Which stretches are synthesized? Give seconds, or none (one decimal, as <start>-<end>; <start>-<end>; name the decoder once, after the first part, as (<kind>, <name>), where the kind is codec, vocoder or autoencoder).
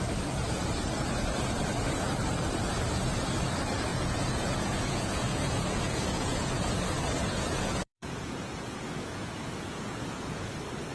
3.9-6.7 (vocoder, Vocos); 7.2-10.5